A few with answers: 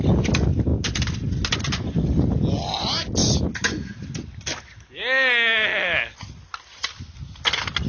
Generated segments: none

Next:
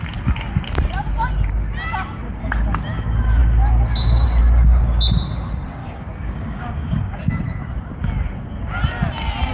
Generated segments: 5.8-7.2 (codec, DAC)

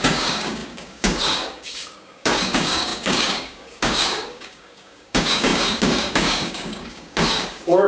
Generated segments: 0.0-7.9 (codec, DAC)

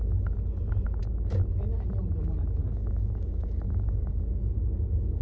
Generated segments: 2.6-4.2 (codec, DAC)

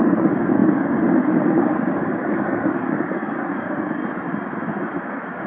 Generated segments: 0.0-4.0 (codec, DAC); 5.0-5.5

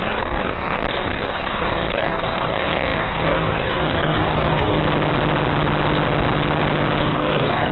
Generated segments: 0.0-4.8 (codec, DAC); 7.0-7.7

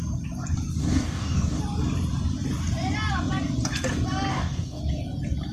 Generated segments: 0.8-1.6 (codec, DAC); 4.3-4.8

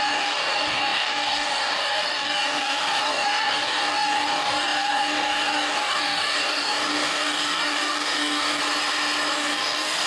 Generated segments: 0.0-8.6 (codec, DAC); 9.3-10.1